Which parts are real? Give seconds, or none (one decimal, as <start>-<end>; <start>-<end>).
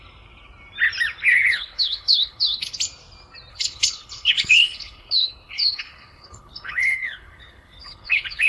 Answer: 0.0-1.3; 2.8-3.5